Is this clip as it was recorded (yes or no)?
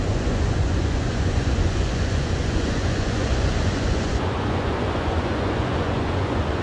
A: no